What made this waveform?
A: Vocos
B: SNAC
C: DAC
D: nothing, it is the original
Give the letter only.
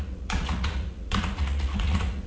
A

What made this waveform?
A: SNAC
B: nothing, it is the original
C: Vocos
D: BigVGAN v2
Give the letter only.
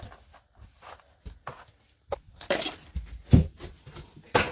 B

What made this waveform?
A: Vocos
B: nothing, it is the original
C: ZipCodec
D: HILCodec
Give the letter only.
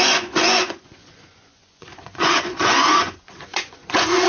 A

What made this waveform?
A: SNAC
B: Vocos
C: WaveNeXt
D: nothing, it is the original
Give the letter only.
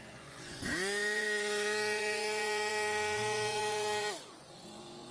B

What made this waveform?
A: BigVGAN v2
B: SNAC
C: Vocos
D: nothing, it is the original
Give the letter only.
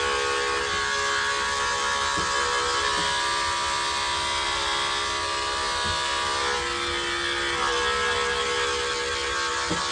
D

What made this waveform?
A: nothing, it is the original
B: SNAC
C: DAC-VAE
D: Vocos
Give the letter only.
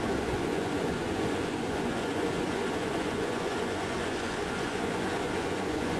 D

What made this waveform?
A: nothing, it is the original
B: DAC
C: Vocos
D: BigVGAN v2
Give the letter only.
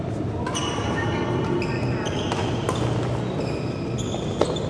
A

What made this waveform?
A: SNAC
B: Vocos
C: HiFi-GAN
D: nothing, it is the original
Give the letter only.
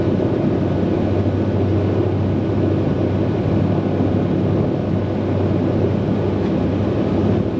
D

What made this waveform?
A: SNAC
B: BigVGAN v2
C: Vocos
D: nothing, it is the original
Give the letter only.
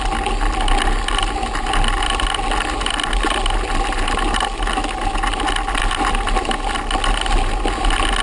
D